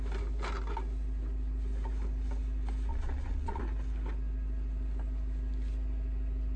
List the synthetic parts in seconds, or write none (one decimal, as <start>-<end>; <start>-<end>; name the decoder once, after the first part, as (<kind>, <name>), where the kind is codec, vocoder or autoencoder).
2.9-3.6 (vocoder, Vocos)